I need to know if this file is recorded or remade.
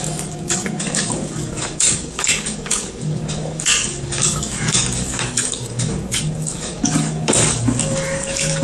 remade